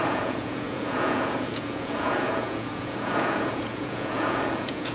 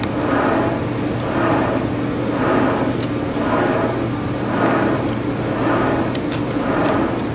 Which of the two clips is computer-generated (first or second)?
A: first